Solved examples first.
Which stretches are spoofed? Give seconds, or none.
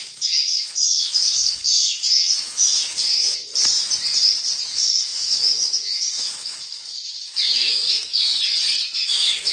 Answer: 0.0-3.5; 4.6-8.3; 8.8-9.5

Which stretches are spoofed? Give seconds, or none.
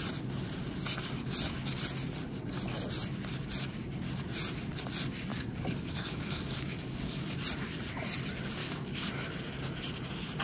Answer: 5.3-7.3; 8.6-9.1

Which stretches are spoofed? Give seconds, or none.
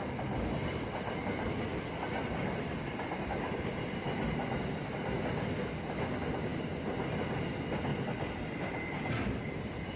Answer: none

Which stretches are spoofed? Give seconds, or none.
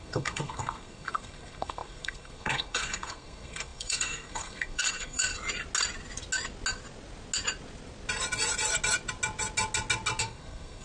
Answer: 0.0-5.3; 10.2-10.8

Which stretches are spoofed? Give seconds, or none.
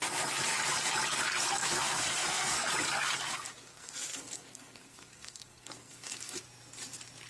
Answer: 1.6-2.7; 3.7-6.4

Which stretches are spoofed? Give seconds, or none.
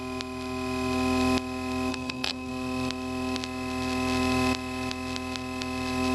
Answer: 1.9-2.5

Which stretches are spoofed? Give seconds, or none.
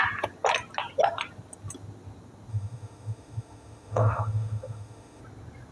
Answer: 2.5-5.2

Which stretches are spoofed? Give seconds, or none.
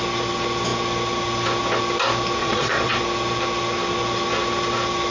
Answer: 2.4-3.0